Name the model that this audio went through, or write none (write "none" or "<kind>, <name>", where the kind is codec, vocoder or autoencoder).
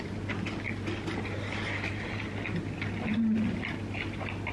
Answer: none